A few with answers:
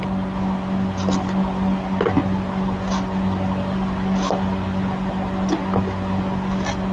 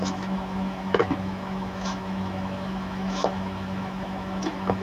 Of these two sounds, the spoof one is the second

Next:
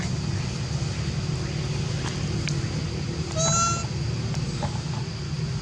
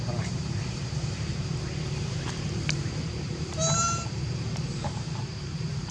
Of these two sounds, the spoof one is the second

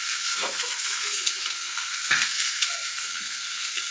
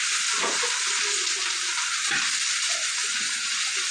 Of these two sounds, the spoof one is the first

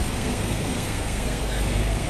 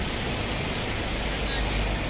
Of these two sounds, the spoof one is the first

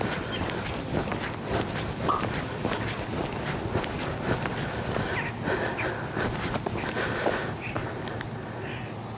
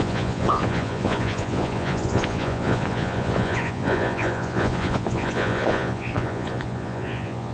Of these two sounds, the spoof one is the second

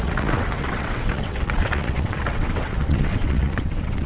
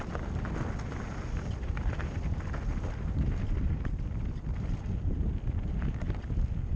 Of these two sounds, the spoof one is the first